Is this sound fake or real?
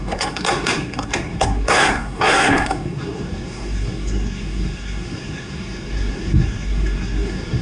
fake